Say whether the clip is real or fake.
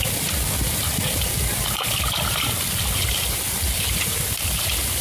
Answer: real